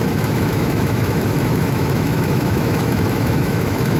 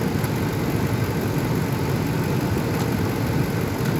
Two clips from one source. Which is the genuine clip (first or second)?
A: second